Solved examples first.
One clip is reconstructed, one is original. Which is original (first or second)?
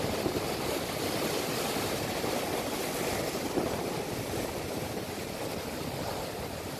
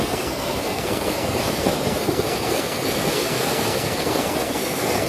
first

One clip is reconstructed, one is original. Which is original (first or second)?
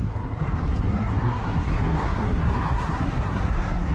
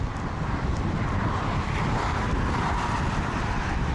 second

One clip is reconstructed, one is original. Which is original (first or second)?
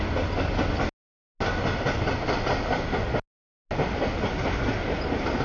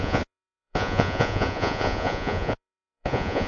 first